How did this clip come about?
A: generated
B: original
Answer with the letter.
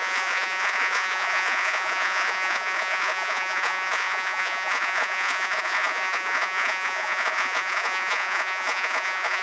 A